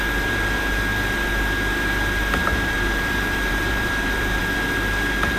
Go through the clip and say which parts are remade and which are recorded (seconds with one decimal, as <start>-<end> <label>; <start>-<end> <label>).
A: 0.0-2.5 recorded; 2.5-4.4 remade; 4.4-5.4 recorded